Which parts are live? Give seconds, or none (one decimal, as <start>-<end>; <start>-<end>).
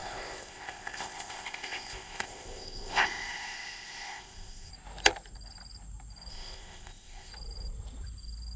4.7-6.3; 7.3-8.6